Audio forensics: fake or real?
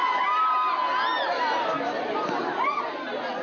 real